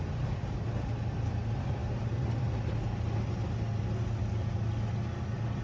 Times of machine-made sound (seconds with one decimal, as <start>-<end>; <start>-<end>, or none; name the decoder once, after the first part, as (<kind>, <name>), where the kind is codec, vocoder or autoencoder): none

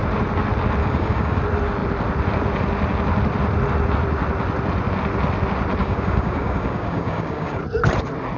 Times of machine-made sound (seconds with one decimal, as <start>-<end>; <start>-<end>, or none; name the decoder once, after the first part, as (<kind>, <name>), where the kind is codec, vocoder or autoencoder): 0.8-1.4 (codec, DAC); 5.8-7.6

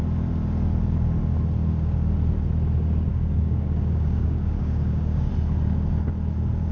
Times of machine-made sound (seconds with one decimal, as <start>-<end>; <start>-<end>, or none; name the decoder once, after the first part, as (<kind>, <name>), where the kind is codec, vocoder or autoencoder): 3.1-5.3 (codec, DAC)

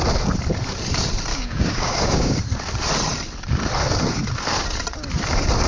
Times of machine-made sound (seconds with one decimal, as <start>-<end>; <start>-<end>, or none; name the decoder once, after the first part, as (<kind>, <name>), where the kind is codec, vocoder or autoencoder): 1.3-2.4 (codec, DAC)